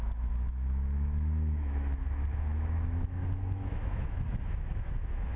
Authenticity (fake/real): fake